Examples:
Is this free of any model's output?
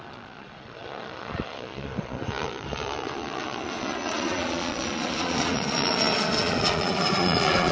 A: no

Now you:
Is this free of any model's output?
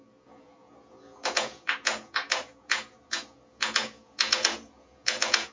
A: no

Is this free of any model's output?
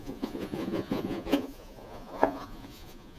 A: no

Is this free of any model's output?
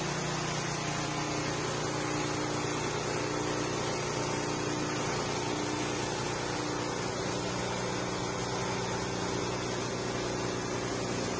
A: yes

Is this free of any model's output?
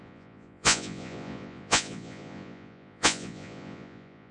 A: no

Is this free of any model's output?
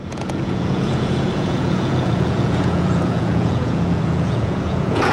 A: no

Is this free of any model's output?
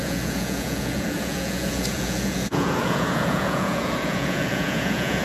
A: no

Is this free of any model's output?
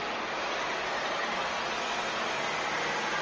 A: yes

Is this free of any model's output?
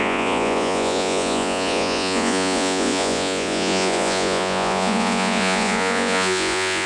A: no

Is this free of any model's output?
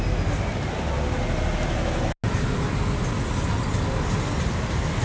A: yes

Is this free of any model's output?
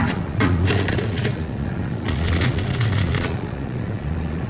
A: no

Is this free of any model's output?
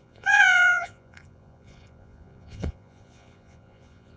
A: no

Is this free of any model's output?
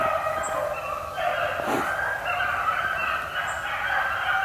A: yes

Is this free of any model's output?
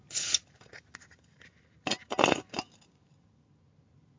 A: yes